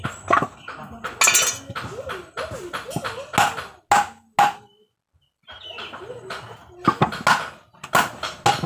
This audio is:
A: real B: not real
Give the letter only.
A